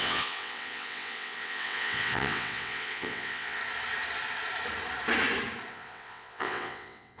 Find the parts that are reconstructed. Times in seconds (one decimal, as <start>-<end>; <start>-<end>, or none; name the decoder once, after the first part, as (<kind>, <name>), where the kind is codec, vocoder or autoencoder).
0.0-3.6 (vocoder, WaveNeXt); 5.7-7.2